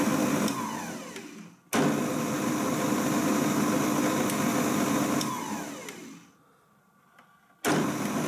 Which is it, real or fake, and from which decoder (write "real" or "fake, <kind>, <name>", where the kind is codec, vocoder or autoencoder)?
real